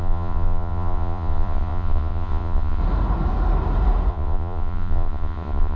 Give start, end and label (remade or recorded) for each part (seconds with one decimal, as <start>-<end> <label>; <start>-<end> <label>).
0.0-2.8 remade; 2.8-4.1 recorded; 4.1-5.8 remade